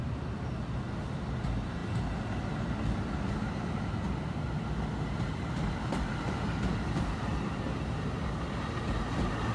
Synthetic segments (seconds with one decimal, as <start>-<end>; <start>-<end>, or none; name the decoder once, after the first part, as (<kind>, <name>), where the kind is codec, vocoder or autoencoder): 7.3-8.6 (vocoder, BigVGAN v2)